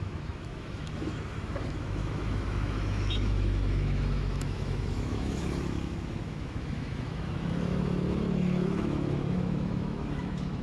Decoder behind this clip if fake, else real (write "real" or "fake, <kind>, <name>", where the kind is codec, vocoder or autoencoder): fake, autoencoder, DAC-VAE